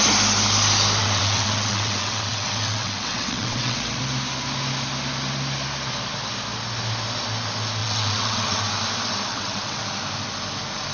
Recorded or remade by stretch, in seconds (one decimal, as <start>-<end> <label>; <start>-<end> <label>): 0.0-1.0 recorded; 1.0-4.0 remade; 4.0-7.8 recorded; 7.8-8.6 remade; 8.6-9.3 recorded; 9.3-9.8 remade; 9.8-10.9 recorded